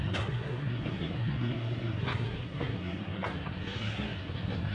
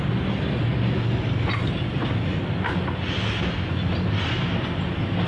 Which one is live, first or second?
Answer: second